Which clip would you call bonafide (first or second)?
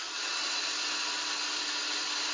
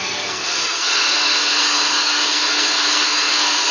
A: first